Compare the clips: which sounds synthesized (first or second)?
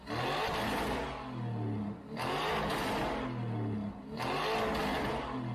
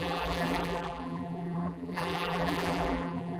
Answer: second